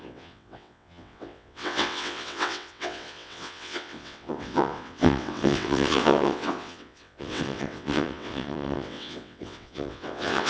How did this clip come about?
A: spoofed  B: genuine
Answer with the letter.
A